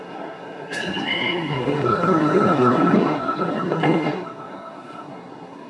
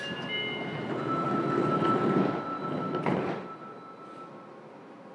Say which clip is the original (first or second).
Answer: second